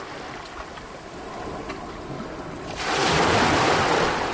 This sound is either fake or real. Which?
real